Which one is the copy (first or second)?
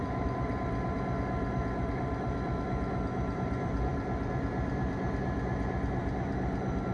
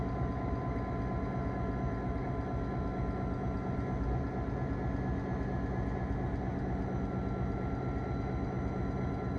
first